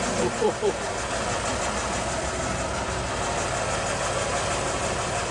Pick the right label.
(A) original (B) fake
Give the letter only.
A